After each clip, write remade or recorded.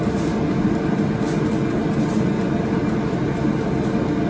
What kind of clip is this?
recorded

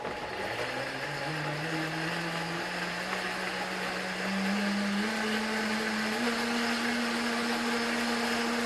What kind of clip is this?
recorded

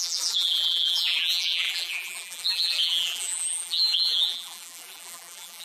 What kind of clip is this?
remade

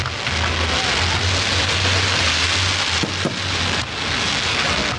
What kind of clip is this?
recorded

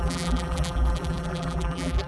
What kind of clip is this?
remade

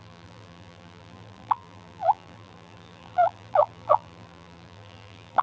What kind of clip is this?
remade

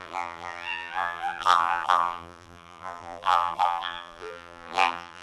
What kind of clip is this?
remade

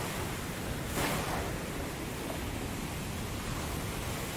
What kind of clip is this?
recorded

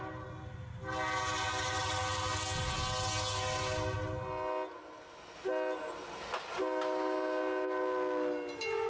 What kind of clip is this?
recorded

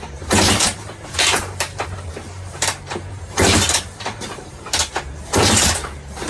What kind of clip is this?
remade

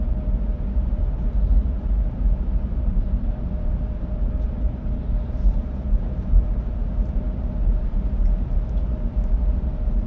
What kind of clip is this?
remade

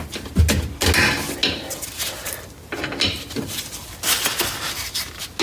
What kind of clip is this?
recorded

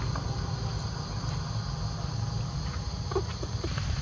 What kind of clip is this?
recorded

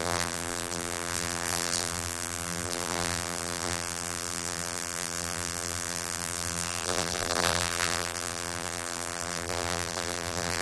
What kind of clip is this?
remade